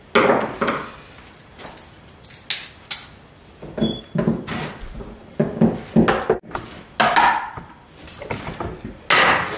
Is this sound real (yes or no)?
yes